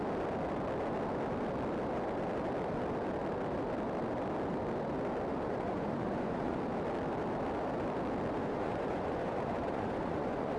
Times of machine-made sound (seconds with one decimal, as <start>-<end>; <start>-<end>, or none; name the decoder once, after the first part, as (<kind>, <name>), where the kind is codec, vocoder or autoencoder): 5.3-6.6 (vocoder, Vocos); 8.4-10.6